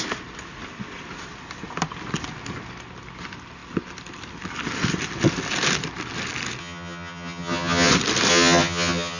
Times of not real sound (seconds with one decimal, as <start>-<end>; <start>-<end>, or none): 6.6-7.9; 8.3-9.2